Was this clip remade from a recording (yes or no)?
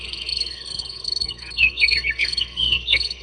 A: yes